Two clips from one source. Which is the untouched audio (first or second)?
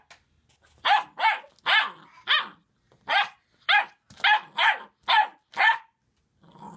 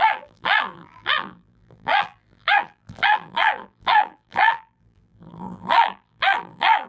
first